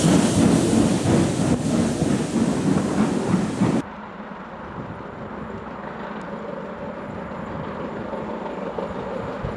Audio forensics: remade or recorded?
recorded